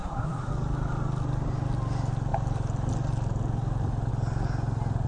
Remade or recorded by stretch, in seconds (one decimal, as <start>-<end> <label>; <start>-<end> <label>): 0.0-0.5 remade; 0.5-5.1 recorded